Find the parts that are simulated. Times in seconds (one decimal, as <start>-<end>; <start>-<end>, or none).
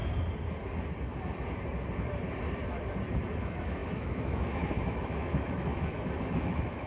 3.4-6.9